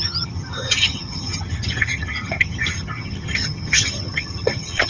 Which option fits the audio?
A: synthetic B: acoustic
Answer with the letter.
A